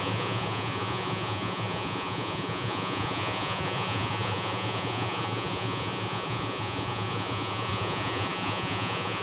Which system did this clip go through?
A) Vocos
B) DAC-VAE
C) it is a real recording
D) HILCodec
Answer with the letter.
A